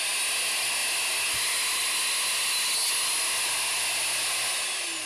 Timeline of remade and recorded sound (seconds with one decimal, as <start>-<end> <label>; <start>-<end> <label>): 0.0-5.1 recorded